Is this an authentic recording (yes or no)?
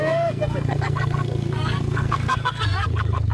no